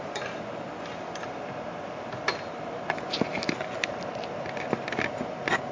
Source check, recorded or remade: recorded